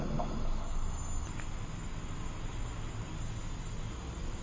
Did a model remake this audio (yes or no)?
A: no